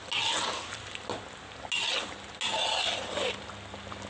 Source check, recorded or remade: recorded